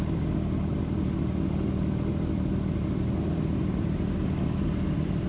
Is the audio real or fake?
real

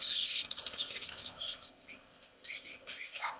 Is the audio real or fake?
fake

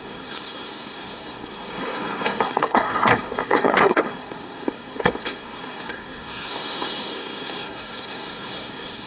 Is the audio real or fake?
fake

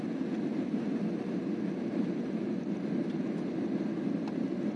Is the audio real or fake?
real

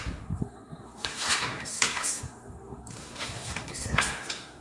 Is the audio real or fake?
fake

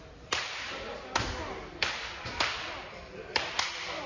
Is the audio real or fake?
real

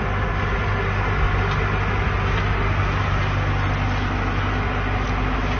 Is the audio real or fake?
real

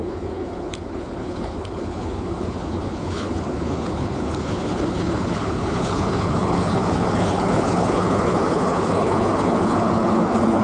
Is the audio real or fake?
fake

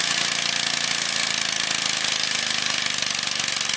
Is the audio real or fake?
real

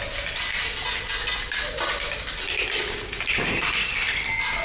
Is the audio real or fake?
real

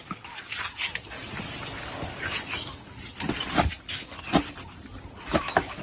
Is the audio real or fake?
real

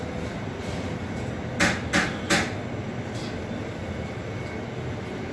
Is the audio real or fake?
real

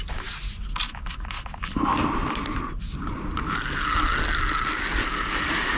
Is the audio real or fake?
real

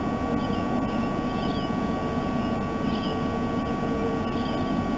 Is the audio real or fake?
real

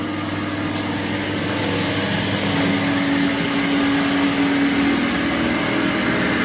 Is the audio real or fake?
real